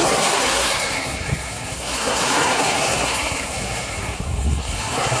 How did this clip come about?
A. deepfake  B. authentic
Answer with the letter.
A